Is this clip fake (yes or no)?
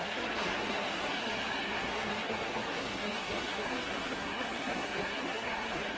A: yes